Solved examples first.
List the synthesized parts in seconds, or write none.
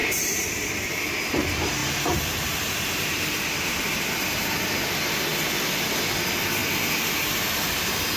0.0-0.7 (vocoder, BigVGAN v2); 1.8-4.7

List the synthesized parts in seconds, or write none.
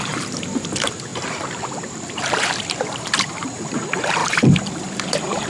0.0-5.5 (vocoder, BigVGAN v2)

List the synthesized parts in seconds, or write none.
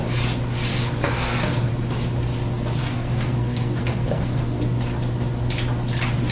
0.7-1.7 (codec, SNAC); 2.8-4.6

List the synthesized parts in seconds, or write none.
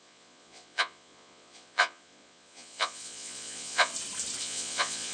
0.0-3.9 (vocoder, Vocos); 4.4-5.1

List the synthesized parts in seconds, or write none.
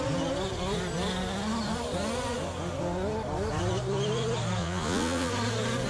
4.6-5.3 (vocoder, Vocos)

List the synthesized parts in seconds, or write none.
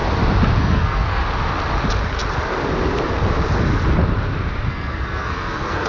0.6-1.2 (codec, SNAC); 4.7-5.9